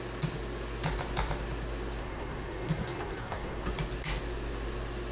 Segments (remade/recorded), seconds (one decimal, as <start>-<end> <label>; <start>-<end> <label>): 0.0-2.0 recorded; 2.0-3.7 remade; 3.7-5.1 recorded